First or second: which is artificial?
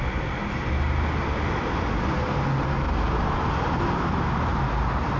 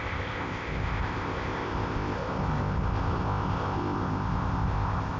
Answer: second